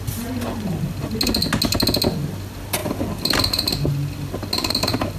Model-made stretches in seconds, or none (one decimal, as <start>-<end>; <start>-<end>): none

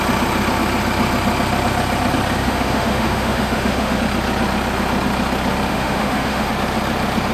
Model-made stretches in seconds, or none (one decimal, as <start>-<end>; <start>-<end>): 2.4-4.0; 5.7-6.5

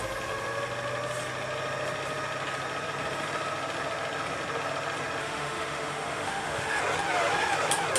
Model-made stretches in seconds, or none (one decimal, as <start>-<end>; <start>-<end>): 5.2-6.8